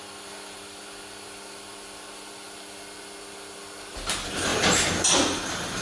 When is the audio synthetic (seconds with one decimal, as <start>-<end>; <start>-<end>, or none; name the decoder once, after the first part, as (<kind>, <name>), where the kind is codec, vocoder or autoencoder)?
none